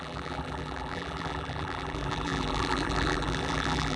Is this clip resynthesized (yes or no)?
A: yes